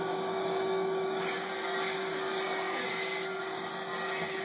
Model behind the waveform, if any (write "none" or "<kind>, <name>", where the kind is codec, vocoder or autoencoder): codec, DAC